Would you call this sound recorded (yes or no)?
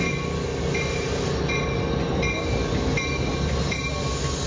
yes